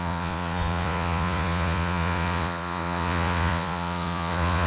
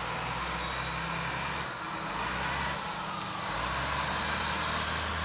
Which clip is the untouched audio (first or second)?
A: second